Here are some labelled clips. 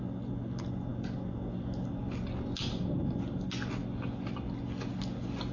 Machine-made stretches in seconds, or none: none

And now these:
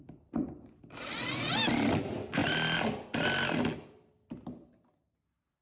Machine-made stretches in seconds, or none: none

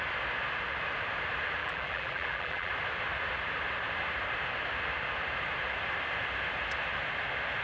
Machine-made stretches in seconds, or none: 1.6-2.7 (vocoder, BigVGAN v2)

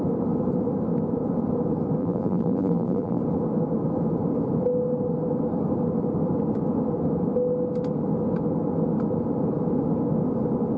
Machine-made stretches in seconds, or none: 2.0-3.2 (vocoder, BigVGAN v2)

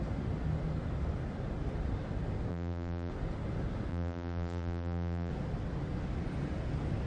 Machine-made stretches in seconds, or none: 2.5-3.1 (vocoder, BigVGAN v2); 3.9-5.3

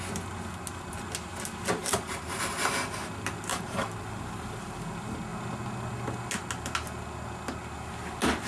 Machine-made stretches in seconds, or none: 1.8-2.4 (vocoder, BigVGAN v2); 3.5-4.8